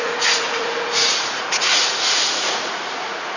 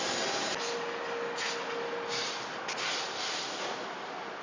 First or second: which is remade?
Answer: first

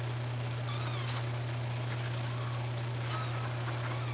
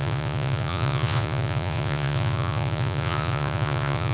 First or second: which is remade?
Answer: second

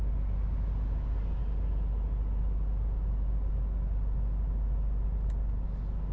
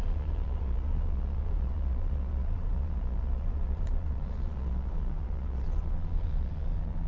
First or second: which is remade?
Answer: second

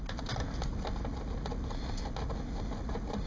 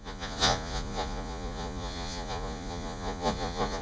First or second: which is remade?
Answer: second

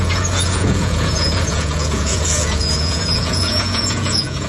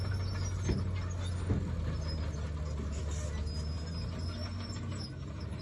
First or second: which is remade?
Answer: first